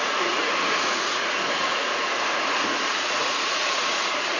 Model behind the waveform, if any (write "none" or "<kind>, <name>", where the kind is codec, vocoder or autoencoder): vocoder, Vocos